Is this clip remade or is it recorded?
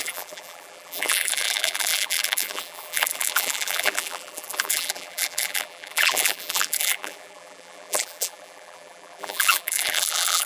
remade